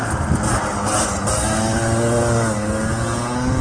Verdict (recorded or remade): recorded